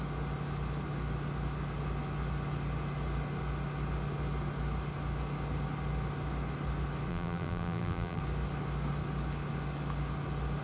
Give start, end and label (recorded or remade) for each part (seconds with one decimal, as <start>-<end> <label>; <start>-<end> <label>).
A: 0.0-7.1 recorded; 7.1-8.2 remade; 8.2-10.6 recorded